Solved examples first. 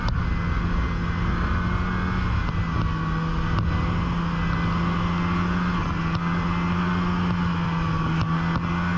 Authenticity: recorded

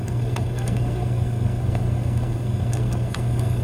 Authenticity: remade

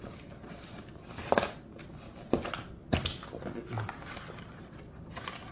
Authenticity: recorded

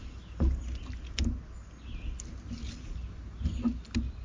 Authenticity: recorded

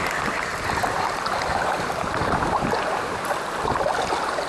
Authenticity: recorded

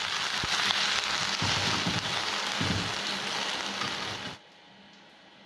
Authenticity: recorded